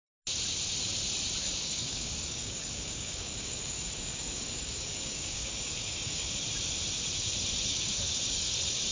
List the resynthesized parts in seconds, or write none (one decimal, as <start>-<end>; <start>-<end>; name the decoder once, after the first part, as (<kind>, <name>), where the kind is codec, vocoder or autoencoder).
1.4-6.3 (codec, DAC); 7.7-8.5